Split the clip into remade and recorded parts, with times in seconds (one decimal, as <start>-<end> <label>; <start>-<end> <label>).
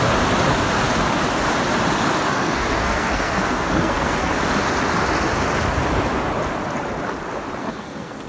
0.0-2.3 recorded; 2.3-4.3 remade; 4.3-7.6 recorded; 7.6-8.3 remade